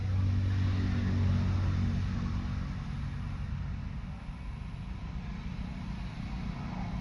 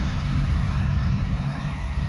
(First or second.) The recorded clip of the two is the first